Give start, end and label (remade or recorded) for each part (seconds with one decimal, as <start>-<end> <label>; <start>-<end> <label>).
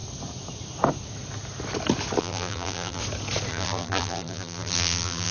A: 0.0-2.2 recorded; 2.2-3.0 remade; 3.0-3.5 recorded; 3.5-5.3 remade